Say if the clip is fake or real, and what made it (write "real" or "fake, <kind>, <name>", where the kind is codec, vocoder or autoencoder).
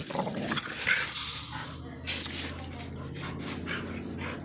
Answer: real